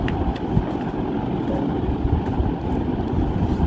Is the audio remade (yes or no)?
no